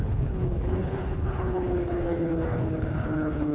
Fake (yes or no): yes